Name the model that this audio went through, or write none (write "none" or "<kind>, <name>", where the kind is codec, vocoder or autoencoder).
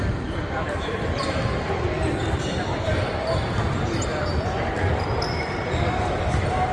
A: vocoder, BigVGAN v2